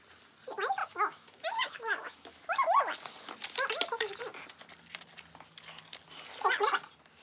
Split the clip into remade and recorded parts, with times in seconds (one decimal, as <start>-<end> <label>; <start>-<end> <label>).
0.0-0.8 recorded; 0.8-2.8 remade; 2.8-7.2 recorded